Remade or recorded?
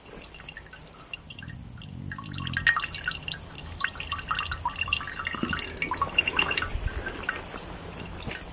recorded